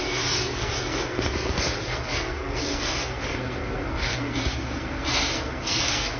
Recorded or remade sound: remade